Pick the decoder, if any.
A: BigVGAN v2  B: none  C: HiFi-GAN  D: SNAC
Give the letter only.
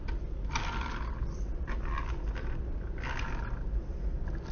B